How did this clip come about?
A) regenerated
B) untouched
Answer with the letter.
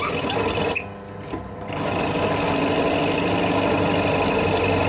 B